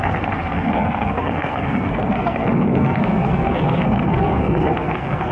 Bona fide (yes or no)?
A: no